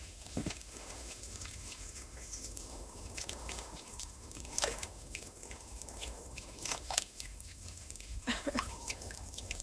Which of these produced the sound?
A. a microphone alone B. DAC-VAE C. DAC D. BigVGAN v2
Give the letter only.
B